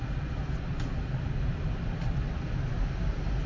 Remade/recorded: recorded